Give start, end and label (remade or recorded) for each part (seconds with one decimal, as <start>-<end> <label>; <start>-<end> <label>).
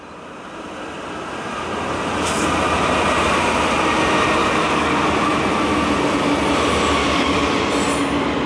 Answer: 0.0-4.4 recorded; 4.4-5.0 remade; 5.0-7.0 recorded; 7.0-7.6 remade; 7.6-8.5 recorded